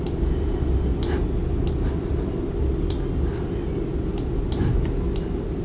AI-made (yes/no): no